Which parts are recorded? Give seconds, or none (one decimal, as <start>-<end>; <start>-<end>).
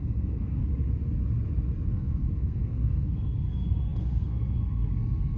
0.6-1.9